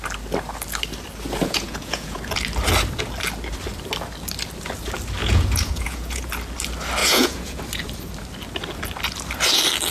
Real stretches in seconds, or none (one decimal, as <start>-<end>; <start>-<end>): 0.0-1.4; 2.2-5.2; 6.3-7.0; 7.6-9.9